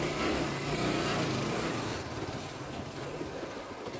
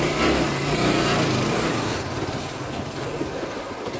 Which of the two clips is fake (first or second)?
first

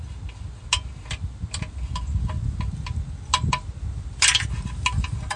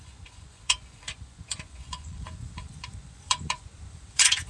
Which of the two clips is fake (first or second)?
second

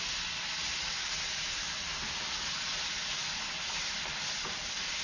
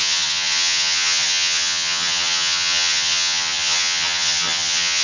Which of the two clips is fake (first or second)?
second